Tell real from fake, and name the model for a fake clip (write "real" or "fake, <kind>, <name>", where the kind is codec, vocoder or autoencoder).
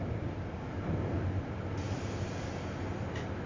real